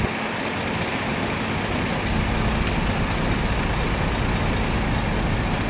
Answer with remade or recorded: recorded